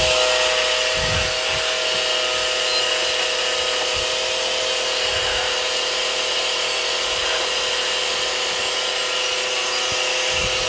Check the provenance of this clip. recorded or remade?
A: recorded